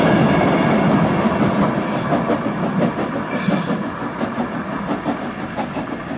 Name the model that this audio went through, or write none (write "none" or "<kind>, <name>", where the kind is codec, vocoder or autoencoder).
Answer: none